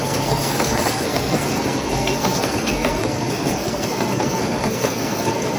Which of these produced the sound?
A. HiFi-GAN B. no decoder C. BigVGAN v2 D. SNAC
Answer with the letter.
D